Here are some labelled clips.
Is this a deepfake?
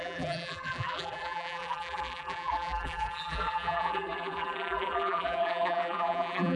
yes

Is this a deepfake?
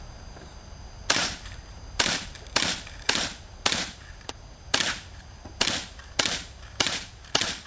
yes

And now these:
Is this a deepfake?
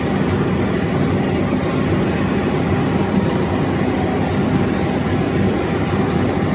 no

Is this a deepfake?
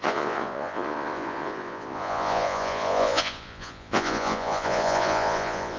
yes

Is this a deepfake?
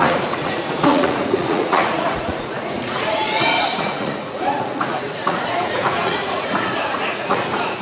yes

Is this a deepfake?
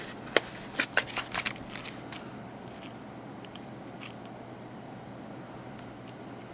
no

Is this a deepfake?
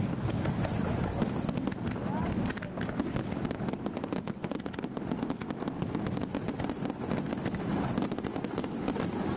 no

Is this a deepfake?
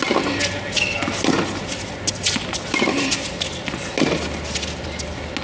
no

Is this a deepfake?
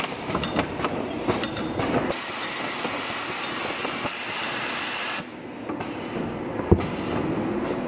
no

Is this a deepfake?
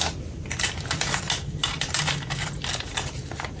no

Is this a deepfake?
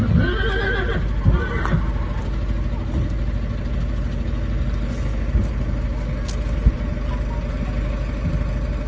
no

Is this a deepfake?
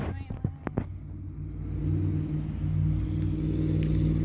no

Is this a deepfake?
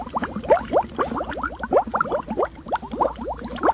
no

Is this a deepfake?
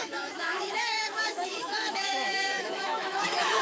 yes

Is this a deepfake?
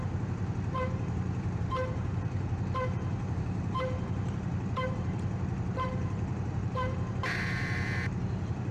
yes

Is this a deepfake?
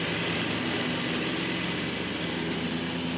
no